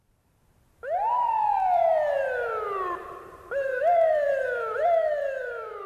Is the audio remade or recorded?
remade